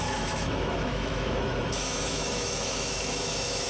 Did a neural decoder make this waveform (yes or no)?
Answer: yes